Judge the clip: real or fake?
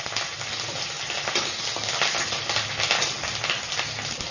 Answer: real